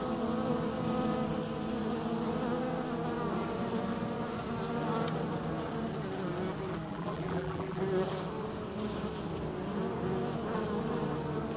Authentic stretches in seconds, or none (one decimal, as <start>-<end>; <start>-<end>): 0.0-6.9; 7.8-11.6